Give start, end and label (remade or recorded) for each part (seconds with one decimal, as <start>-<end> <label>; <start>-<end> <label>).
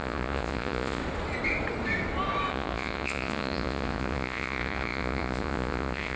0.0-1.0 remade; 1.0-2.5 recorded; 2.5-6.2 remade